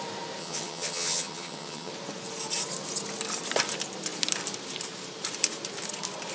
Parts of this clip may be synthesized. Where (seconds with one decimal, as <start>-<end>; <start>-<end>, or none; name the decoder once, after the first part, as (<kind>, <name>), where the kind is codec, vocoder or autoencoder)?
0.4-1.9 (vocoder, HiFi-GAN)